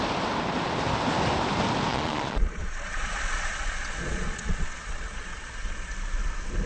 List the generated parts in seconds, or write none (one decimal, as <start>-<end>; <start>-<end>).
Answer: 1.9-5.9